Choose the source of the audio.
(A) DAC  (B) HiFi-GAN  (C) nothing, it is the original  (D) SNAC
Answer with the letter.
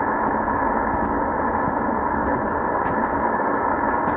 C